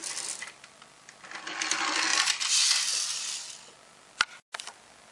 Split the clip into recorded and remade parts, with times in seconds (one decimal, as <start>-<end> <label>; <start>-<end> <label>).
0.0-1.4 remade; 1.4-2.1 recorded; 2.1-2.7 remade; 2.7-5.1 recorded